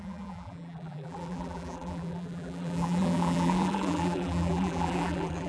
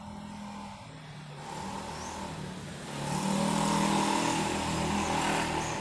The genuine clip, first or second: second